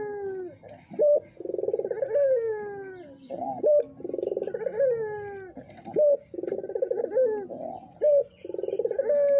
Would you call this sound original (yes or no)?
yes